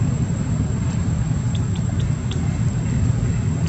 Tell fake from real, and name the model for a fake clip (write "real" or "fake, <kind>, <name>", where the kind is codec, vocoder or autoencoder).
real